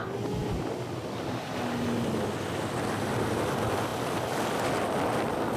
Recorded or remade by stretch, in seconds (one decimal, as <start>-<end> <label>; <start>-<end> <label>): 0.0-5.6 recorded